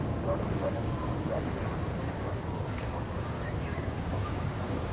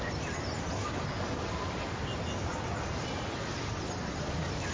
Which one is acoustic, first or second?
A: second